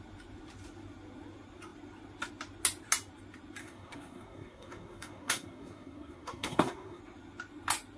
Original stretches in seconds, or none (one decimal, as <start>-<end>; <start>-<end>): 0.0-3.6; 7.0-8.0